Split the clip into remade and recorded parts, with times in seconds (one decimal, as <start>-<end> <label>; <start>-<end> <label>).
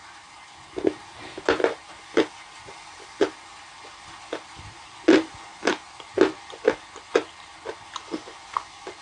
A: 0.0-9.0 recorded